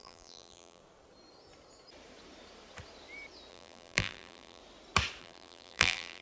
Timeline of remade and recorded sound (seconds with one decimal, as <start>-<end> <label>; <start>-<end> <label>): 0.0-0.8 remade; 0.8-3.5 recorded; 3.5-4.6 remade; 4.6-5.2 recorded; 5.2-6.2 remade